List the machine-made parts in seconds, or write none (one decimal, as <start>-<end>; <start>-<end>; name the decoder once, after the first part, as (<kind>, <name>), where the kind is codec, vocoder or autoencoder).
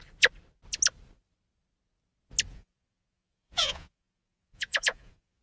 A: 2.5-5.4 (vocoder, Vocos)